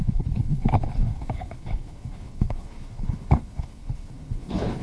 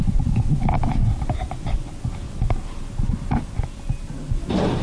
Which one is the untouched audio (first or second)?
second